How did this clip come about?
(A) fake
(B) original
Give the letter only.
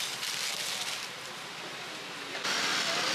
B